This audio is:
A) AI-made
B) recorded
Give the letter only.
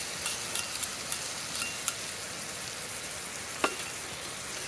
B